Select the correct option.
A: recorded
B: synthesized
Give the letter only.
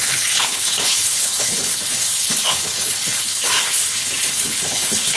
B